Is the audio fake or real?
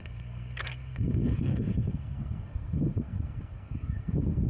fake